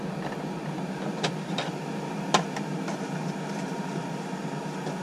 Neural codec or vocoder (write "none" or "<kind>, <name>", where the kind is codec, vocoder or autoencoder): none